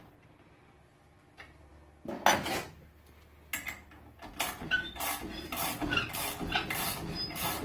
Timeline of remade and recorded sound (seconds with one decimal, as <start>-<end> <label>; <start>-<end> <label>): 0.0-7.6 recorded